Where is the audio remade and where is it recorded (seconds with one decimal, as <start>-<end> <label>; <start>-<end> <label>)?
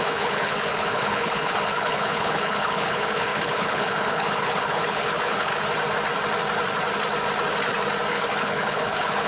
0.0-5.5 remade; 5.5-8.1 recorded; 8.1-9.3 remade